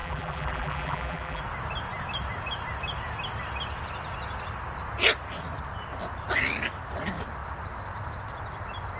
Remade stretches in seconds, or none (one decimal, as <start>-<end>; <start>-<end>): 0.0-1.4